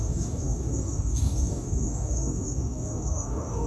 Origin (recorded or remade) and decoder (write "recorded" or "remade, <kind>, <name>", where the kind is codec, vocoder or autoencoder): remade, codec, DAC